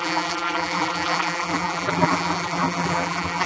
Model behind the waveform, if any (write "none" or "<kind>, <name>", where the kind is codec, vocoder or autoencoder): vocoder, BigVGAN v2